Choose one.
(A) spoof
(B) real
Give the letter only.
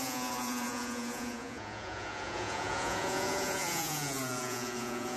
A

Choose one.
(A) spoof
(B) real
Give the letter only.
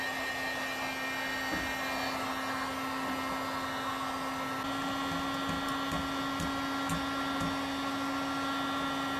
B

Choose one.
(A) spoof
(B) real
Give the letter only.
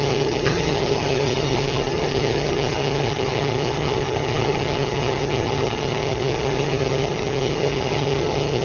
A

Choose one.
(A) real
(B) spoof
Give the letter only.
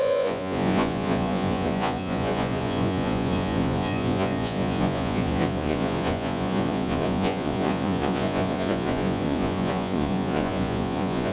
B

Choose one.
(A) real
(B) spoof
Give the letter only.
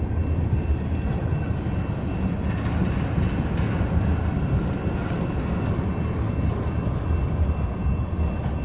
A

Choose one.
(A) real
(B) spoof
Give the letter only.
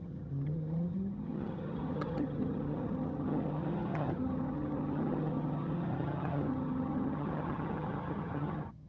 B